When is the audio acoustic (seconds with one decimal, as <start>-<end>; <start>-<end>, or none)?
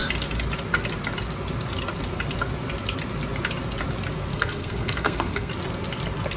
0.0-4.3; 5.5-6.4